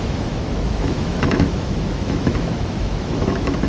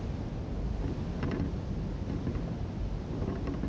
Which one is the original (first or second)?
second